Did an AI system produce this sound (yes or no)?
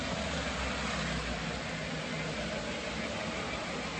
no